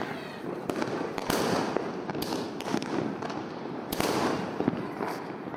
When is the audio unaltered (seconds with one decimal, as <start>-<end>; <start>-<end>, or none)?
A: 0.0-5.6